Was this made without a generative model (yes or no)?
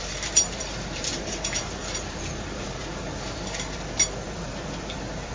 no